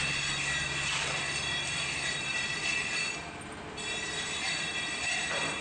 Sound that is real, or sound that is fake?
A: real